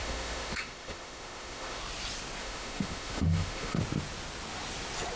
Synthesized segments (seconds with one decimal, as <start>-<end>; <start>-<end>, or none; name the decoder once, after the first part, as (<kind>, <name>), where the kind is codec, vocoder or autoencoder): 0.0-1.8 (autoencoder, DAC-VAE); 2.4-3.8